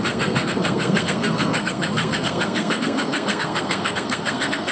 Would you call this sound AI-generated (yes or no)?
yes